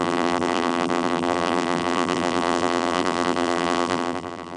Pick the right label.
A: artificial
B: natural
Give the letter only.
A